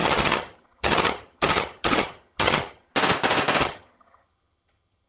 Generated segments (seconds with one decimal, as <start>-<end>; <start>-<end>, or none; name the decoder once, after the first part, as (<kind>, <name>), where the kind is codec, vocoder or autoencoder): 0.0-2.9 (vocoder, HiFi-GAN); 3.6-5.1